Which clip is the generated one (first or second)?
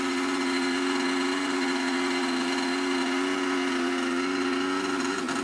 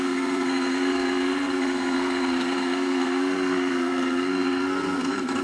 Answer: second